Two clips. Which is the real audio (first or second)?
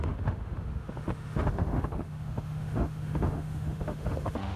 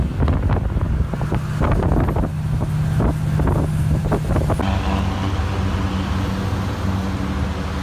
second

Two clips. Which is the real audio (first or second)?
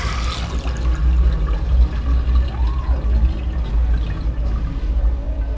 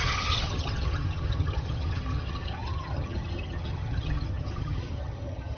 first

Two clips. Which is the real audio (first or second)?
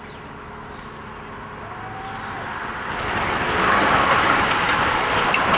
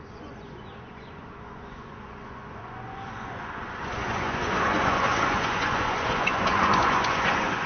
first